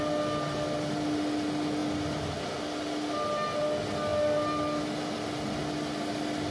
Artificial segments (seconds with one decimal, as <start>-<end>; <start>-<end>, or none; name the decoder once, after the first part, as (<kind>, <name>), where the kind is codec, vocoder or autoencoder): none

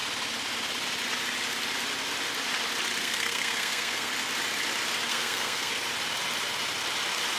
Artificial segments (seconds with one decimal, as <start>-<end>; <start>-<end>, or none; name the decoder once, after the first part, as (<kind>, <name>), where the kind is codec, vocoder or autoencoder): 3.0-4.1 (codec, SNAC); 5.1-5.7

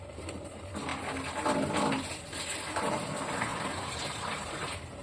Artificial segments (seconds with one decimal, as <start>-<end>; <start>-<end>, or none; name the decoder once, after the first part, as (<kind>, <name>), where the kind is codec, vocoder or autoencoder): 0.0-0.9 (vocoder, BigVGAN v2); 2.5-5.0

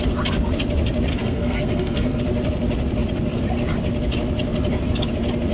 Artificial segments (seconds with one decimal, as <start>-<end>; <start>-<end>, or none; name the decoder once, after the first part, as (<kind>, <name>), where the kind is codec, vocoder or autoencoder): 1.1-2.2 (codec, SNAC)

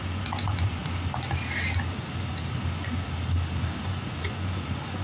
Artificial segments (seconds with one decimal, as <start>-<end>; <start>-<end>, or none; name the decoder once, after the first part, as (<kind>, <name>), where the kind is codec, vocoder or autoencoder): 0.0-0.8 (vocoder, Vocos); 3.8-5.0

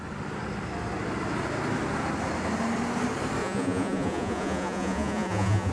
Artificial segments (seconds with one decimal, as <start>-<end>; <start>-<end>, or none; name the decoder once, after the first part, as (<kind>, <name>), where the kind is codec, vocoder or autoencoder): 3.4-5.7 (vocoder, Vocos)

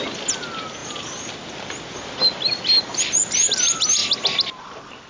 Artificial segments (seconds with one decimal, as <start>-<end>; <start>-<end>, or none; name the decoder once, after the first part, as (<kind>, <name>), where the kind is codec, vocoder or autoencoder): none